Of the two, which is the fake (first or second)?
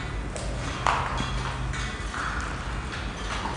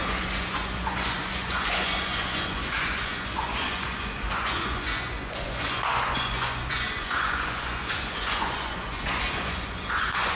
second